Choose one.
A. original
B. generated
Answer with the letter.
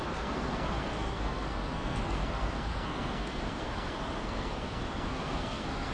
B